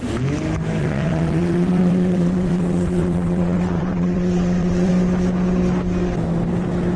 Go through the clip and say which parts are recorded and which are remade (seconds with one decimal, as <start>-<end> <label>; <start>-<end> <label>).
0.0-0.8 recorded; 0.8-4.9 remade; 4.9-7.0 recorded